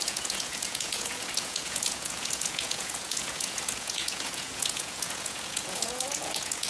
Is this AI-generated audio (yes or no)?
yes